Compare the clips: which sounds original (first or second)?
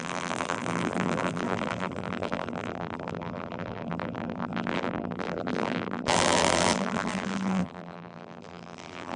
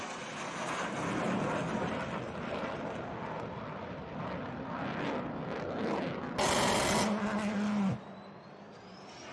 second